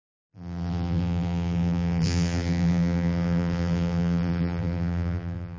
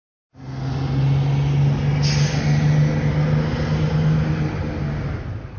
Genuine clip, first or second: second